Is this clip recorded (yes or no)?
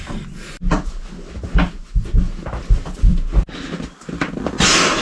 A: yes